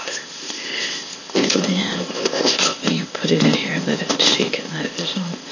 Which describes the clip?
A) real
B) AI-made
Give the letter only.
B